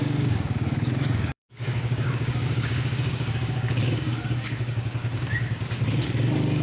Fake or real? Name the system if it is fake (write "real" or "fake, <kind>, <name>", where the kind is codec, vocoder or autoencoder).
fake, codec, DAC